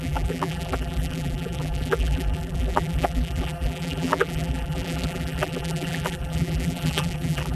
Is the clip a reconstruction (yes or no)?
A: yes